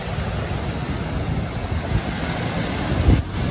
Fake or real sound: real